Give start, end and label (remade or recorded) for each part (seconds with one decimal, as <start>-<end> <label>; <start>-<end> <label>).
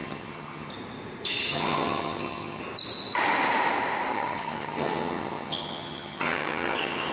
0.0-0.7 remade; 0.7-1.5 recorded; 1.5-2.6 remade; 2.6-4.1 recorded; 4.1-7.1 remade